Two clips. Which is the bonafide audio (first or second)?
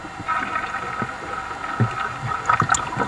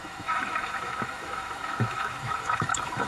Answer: first